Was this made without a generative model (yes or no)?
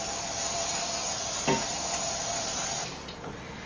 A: yes